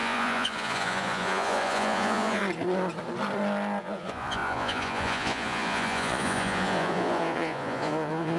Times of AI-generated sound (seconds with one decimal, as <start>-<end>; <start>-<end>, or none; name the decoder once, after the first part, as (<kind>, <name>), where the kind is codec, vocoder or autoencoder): 0.0-2.4 (vocoder, Vocos); 3.8-8.4